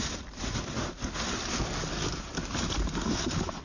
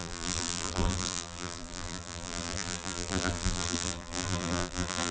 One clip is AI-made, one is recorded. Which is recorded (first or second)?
first